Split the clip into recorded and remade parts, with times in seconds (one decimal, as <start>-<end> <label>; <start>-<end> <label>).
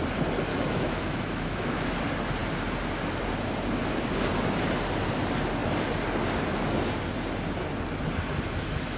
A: 0.0-0.5 recorded; 0.5-1.9 remade; 1.9-9.0 recorded